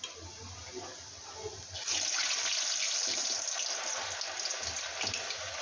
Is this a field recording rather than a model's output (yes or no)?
yes